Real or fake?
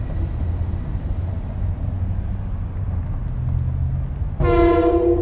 real